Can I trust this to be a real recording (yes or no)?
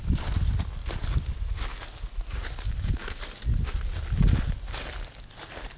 yes